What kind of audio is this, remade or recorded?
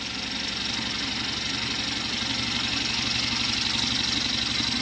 recorded